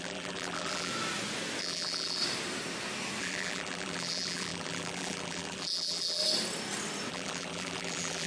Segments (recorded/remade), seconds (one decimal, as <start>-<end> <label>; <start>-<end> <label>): 0.0-0.9 remade; 0.9-1.6 recorded; 1.6-2.2 remade; 2.2-3.2 recorded; 3.2-6.2 remade; 6.2-7.1 recorded; 7.1-8.3 remade